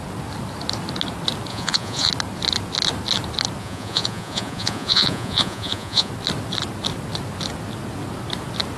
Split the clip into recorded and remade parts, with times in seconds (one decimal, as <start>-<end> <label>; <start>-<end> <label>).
0.0-1.5 recorded; 1.5-2.1 remade; 2.1-3.6 recorded; 3.6-6.1 remade; 6.1-8.8 recorded